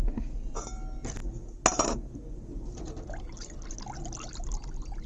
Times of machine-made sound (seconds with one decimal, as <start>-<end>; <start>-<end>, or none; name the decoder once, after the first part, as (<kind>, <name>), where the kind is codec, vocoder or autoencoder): none